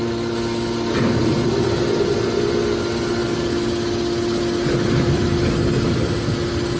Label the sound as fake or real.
real